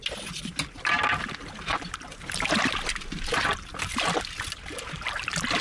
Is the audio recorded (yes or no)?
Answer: yes